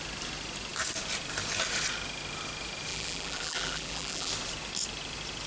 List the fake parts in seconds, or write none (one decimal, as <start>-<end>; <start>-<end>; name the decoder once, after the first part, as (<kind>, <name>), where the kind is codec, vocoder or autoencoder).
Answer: 2.9-4.3 (vocoder, BigVGAN v2)